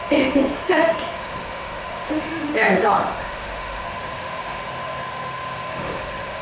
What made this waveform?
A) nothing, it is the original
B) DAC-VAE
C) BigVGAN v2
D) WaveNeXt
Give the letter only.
B